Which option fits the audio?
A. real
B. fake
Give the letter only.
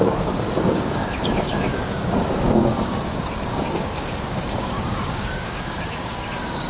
B